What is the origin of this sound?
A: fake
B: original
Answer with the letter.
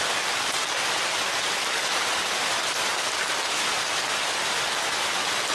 B